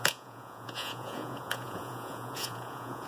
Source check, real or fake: fake